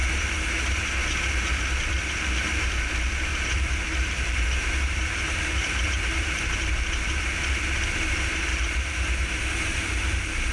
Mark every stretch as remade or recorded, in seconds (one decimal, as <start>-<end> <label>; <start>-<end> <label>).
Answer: 0.0-0.6 remade; 0.6-3.3 recorded; 3.3-7.2 remade; 7.2-8.5 recorded; 8.5-9.4 remade; 9.4-10.5 recorded

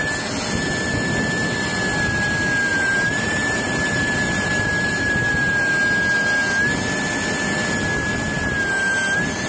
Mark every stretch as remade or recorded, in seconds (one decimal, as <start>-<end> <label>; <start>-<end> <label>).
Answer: 0.0-2.7 recorded; 2.7-5.3 remade; 5.3-9.5 recorded

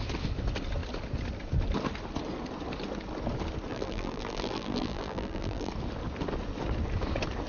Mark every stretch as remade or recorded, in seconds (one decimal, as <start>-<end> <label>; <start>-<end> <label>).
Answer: 0.0-3.7 recorded; 3.7-5.7 remade; 5.7-7.5 recorded

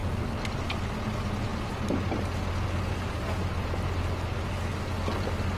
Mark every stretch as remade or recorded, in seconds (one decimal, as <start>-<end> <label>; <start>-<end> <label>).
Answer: 0.0-5.6 recorded